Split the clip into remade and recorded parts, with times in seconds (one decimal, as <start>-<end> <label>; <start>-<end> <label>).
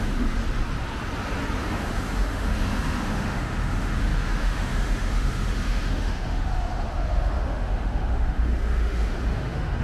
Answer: 0.0-0.4 remade; 0.4-1.6 recorded; 1.6-9.8 remade